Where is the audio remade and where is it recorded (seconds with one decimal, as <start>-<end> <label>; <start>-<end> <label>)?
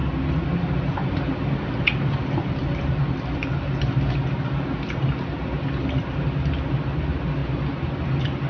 0.0-8.5 recorded